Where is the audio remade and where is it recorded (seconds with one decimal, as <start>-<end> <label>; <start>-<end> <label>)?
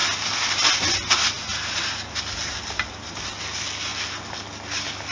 0.0-5.1 recorded